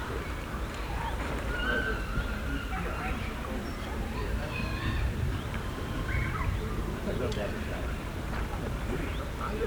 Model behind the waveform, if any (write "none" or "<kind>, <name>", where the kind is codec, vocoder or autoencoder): vocoder, BigVGAN v2